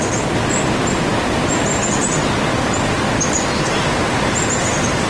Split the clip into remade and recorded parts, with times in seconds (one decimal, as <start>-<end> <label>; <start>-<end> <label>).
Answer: 0.0-5.1 recorded